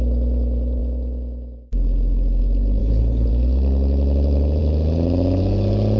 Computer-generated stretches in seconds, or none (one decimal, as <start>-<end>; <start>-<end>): 2.8-3.3